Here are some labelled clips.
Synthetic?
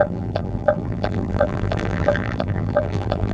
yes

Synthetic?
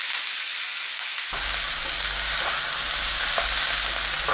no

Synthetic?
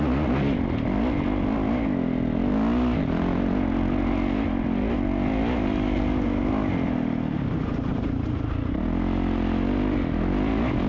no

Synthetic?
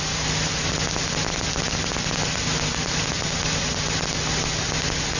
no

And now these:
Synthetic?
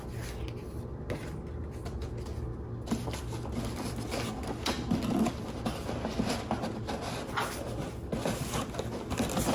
no